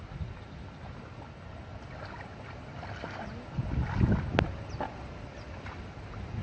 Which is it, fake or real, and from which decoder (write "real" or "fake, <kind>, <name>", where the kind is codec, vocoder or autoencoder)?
real